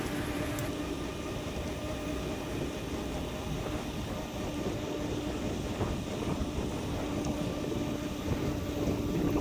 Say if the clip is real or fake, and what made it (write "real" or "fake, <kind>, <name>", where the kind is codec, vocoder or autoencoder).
real